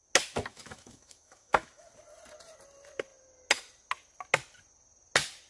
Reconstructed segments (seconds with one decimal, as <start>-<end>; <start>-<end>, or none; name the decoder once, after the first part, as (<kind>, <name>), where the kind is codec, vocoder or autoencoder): 0.5-1.9 (autoencoder, DAC-VAE)